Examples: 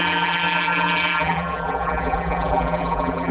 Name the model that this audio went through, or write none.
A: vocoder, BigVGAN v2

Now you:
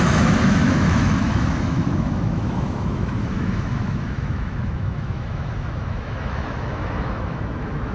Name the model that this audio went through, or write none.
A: autoencoder, DAC-VAE